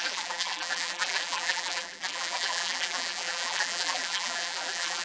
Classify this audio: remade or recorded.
remade